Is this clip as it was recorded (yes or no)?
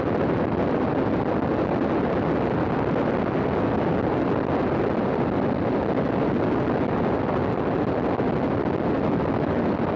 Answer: yes